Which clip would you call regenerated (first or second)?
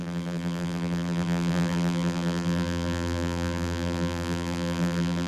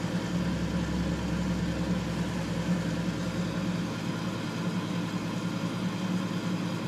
first